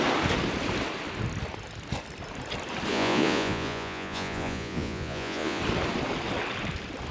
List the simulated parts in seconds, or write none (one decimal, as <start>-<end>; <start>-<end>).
2.9-5.6